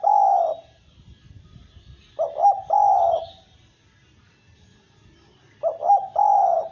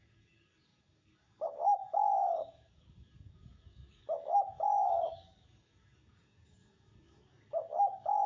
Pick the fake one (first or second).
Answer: second